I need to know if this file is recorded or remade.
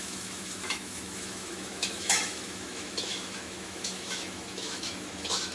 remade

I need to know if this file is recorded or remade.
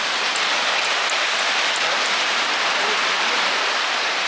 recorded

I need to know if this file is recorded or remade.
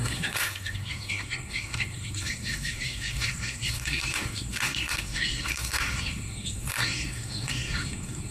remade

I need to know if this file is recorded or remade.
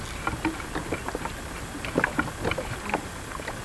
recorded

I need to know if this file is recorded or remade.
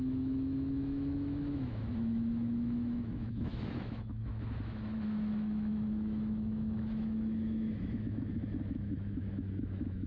remade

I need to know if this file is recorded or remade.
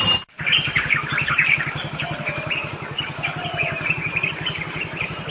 remade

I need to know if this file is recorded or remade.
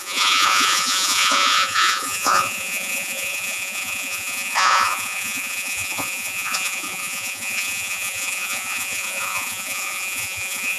remade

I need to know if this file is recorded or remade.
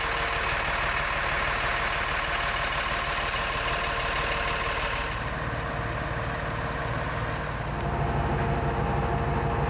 recorded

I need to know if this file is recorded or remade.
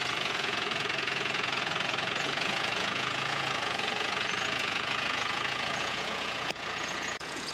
remade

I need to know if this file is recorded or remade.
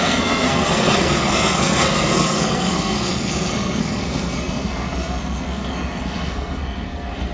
remade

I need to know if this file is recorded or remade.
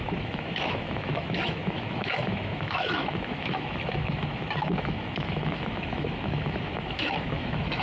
remade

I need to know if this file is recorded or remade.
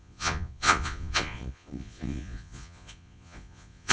remade